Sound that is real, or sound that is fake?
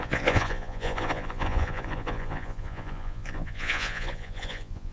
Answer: fake